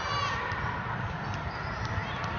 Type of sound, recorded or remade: recorded